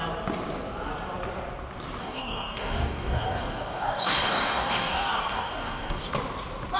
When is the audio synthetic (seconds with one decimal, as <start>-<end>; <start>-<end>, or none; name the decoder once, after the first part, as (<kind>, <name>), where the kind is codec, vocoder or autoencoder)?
2.0-6.1 (codec, DAC)